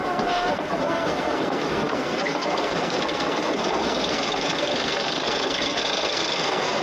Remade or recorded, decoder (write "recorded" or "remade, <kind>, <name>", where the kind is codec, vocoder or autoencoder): remade, codec, SNAC